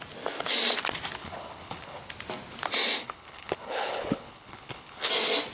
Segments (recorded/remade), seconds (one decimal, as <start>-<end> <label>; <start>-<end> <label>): 0.0-1.2 recorded; 1.2-2.0 remade; 2.0-3.0 recorded; 3.0-5.1 remade; 5.1-5.5 recorded